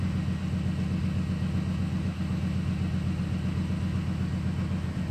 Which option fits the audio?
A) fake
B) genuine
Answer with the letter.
B